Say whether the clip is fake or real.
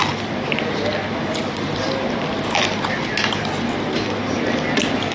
real